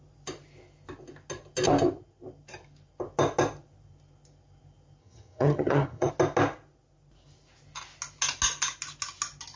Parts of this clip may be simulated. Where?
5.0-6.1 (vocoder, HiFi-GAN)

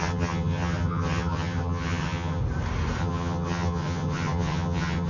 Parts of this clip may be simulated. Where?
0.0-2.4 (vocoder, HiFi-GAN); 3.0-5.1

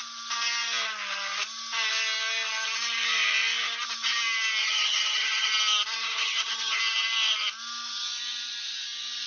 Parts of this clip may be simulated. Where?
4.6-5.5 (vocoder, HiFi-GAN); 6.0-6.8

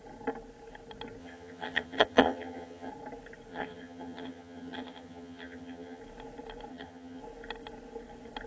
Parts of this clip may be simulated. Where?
1.2-2.9 (vocoder, HiFi-GAN); 3.5-6.0; 6.7-7.2